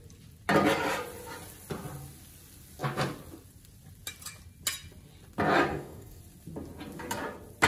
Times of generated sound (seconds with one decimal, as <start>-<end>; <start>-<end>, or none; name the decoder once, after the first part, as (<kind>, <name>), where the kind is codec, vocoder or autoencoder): 5.7-6.2 (codec, DAC)